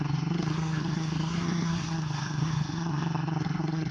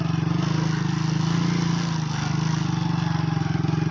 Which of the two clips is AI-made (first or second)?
first